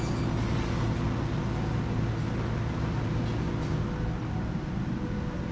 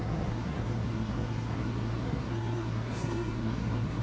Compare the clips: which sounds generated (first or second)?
second